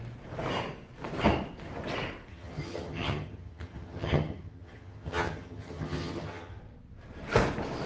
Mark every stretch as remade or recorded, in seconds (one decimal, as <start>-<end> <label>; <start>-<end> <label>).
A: 0.0-2.3 recorded; 2.3-6.6 remade; 6.6-7.9 recorded